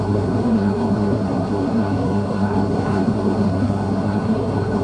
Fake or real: fake